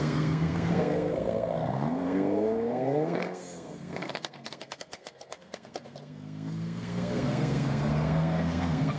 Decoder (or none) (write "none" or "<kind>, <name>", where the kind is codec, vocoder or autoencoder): codec, SNAC